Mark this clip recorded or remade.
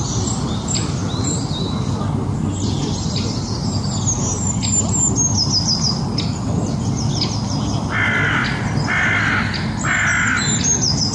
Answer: recorded